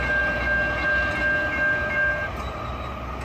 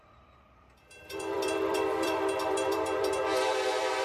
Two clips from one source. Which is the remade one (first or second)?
second